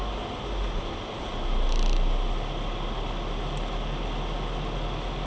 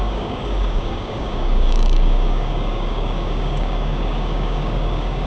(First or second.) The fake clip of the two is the second